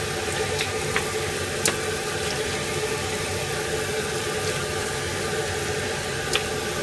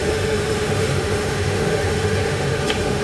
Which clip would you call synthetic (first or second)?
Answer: second